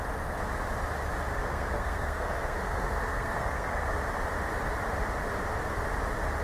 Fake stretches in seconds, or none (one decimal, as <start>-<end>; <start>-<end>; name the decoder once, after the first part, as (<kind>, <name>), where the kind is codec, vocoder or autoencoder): 1.3-3.9 (codec, SNAC)